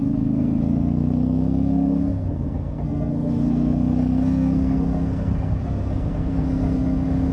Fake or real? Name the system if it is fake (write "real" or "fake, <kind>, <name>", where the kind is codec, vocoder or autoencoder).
fake, codec, SNAC